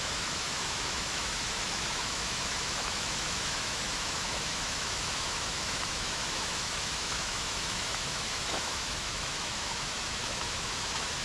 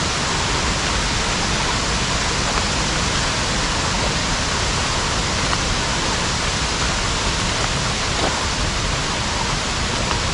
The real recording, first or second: second